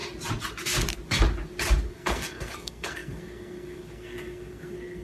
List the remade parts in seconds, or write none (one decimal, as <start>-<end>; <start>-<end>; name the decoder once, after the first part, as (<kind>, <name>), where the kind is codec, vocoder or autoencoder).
1.9-5.0 (codec, SNAC)